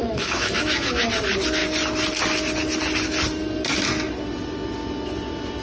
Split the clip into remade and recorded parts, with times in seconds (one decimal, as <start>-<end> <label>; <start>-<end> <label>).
0.0-1.0 remade; 1.0-5.6 recorded